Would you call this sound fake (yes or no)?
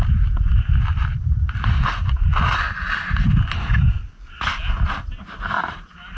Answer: no